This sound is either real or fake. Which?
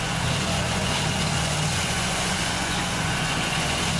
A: fake